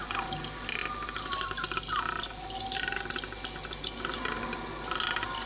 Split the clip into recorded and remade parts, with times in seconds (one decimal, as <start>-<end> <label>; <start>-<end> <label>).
0.0-5.5 recorded